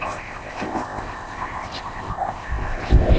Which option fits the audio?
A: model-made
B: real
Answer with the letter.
A